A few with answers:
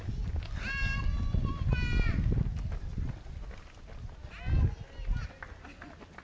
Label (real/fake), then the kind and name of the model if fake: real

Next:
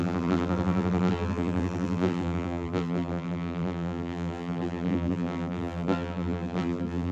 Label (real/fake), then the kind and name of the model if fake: fake, vocoder, BigVGAN v2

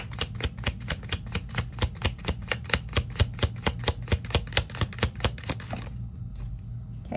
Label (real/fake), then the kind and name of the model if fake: real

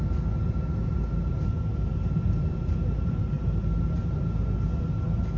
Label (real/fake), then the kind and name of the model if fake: real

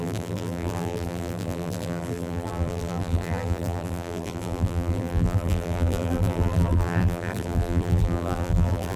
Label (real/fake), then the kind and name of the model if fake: fake, vocoder, BigVGAN v2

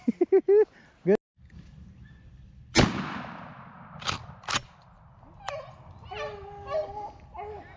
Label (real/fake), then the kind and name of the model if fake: real